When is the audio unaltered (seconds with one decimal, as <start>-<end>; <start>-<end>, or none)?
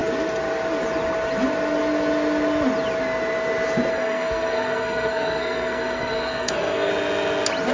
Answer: 0.0-3.9; 6.9-7.7